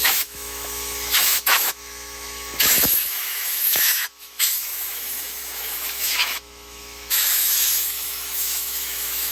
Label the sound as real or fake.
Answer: fake